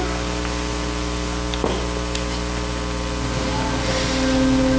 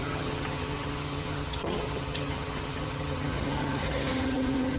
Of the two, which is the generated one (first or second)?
second